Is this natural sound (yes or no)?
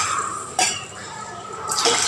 no